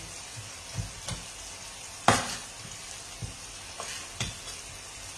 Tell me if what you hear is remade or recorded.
recorded